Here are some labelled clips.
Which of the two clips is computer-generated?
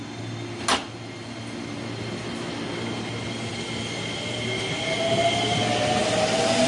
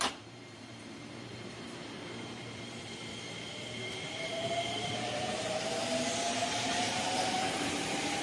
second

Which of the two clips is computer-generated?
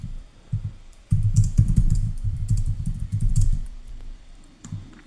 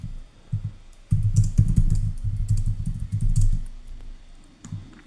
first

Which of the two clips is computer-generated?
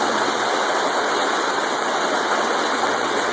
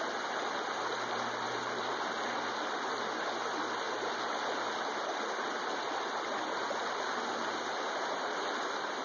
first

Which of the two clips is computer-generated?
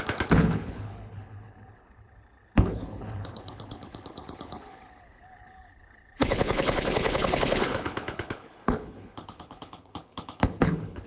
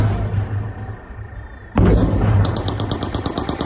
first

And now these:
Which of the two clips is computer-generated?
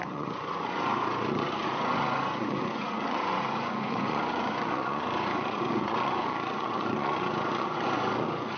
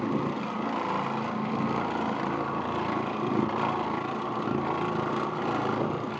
first